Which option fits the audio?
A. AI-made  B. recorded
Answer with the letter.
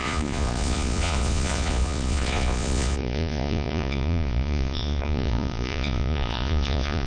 A